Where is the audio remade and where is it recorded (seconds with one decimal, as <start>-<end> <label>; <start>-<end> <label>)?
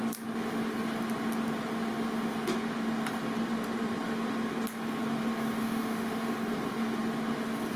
0.0-5.6 recorded; 5.6-6.3 remade; 6.3-7.8 recorded